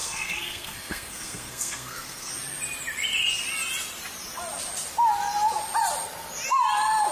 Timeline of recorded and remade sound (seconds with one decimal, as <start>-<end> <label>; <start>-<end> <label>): 0.0-2.3 remade; 2.3-7.1 recorded